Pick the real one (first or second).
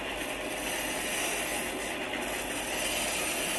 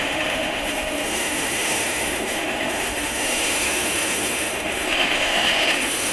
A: first